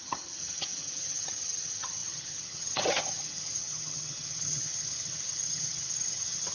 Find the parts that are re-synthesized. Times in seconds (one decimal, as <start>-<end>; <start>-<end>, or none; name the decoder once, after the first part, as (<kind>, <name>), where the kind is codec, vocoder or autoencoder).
0.0-6.5 (vocoder, HiFi-GAN)